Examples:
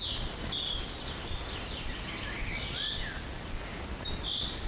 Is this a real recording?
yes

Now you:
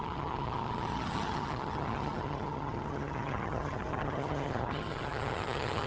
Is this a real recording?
no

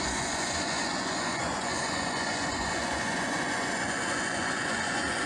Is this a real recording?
no